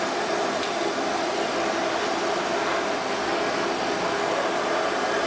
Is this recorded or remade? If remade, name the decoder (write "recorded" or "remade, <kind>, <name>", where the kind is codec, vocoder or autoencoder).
recorded